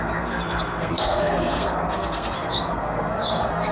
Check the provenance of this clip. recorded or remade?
remade